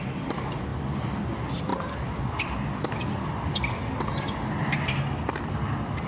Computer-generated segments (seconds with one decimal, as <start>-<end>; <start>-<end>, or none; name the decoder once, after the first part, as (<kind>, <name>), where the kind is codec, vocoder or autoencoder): none